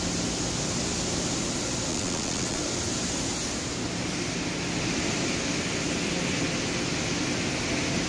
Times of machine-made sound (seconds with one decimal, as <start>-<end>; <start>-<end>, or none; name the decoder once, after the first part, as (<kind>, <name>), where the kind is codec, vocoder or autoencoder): 1.9-2.6 (vocoder, Vocos)